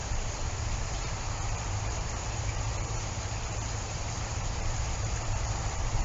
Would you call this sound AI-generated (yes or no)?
yes